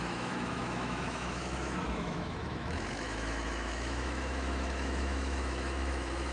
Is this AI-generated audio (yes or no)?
yes